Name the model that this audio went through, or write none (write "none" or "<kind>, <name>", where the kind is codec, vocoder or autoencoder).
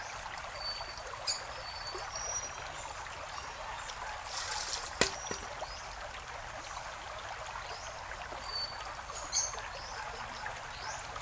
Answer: none